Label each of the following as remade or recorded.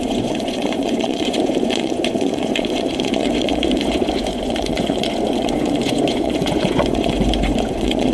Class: remade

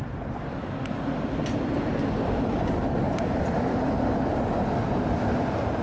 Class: recorded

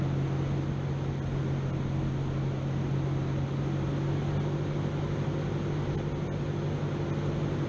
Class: recorded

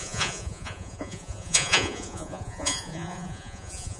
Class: remade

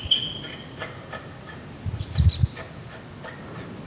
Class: recorded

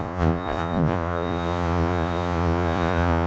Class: remade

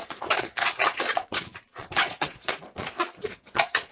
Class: remade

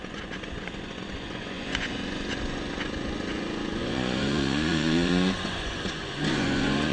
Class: remade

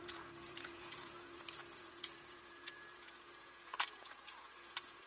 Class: remade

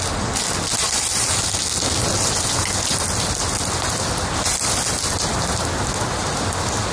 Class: recorded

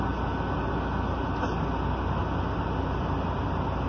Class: recorded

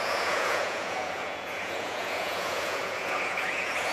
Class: remade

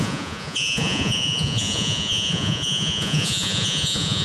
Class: remade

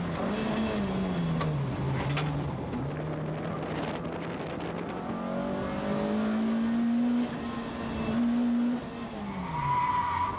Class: recorded